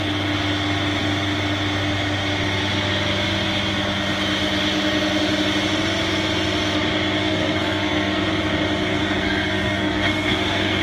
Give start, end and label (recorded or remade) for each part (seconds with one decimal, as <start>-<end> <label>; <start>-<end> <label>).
0.0-7.2 recorded; 7.2-8.2 remade; 8.2-8.9 recorded; 8.9-10.8 remade